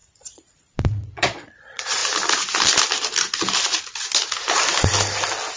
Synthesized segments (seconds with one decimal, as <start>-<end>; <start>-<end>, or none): 0.0-2.0